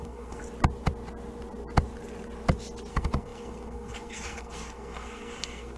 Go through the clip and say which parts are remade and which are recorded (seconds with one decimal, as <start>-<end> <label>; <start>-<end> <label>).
0.0-0.4 remade; 0.4-2.9 recorded; 2.9-5.8 remade